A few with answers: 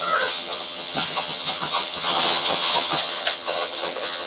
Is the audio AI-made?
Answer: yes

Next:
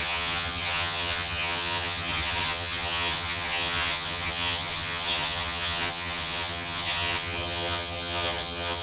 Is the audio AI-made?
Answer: yes